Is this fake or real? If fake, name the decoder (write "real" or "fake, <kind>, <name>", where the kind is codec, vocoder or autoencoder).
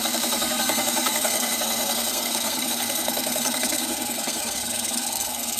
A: fake, codec, SNAC